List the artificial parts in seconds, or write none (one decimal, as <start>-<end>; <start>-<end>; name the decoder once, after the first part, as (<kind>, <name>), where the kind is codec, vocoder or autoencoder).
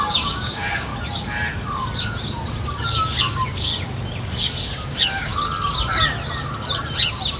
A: 0.0-0.9 (codec, DAC); 2.7-3.7; 4.2-5.3